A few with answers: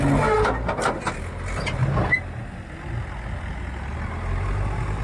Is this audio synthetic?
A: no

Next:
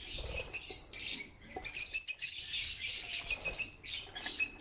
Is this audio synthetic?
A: no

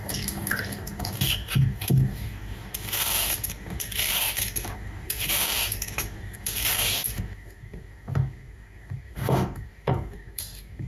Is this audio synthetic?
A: yes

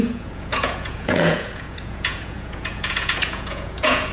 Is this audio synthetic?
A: yes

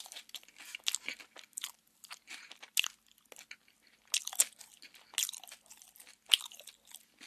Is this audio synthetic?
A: no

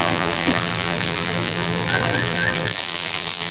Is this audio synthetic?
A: yes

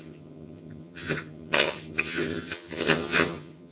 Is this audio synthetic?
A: yes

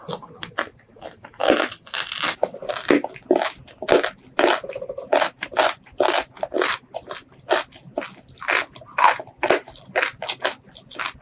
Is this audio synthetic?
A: no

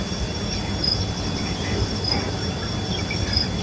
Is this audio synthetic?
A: yes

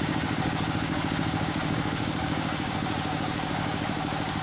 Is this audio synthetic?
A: yes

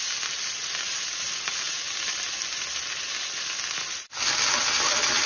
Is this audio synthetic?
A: no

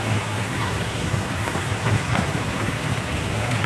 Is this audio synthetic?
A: yes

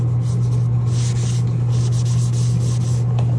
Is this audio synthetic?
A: no